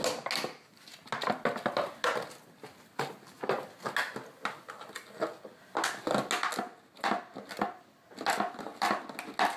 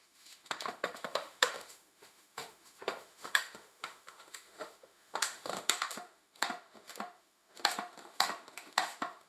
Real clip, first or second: first